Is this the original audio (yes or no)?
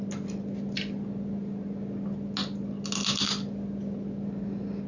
yes